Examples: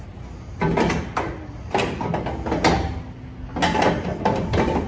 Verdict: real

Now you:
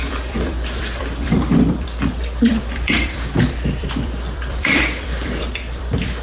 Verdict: fake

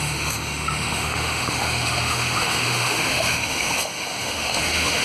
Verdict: fake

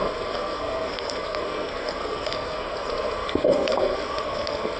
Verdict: fake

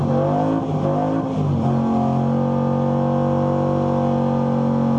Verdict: real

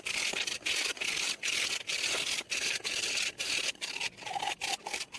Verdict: fake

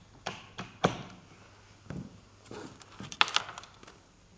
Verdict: real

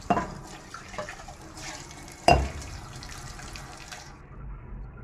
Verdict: fake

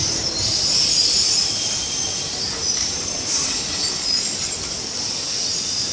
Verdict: real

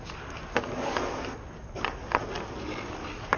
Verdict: real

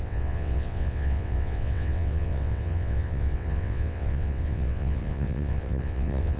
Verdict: fake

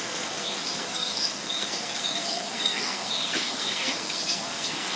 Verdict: fake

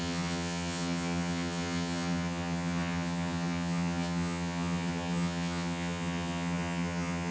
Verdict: fake